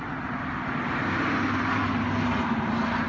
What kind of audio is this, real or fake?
real